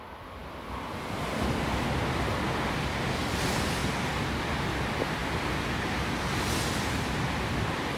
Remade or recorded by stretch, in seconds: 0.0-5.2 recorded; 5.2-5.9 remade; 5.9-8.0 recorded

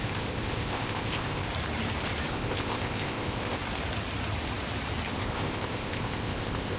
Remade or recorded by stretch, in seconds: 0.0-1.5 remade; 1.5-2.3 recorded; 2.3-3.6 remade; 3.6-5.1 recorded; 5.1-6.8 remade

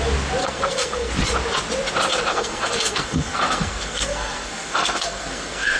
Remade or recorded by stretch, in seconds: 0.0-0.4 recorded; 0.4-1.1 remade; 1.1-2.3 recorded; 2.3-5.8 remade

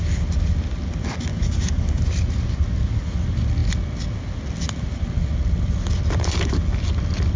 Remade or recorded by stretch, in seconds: 0.0-1.3 recorded; 1.3-2.0 remade; 2.0-7.4 recorded